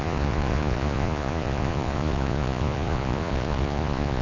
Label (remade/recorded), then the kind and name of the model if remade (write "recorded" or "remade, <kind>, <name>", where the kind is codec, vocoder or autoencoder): remade, vocoder, Vocos